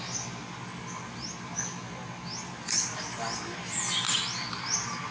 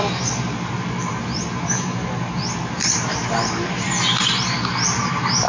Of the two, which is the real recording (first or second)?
first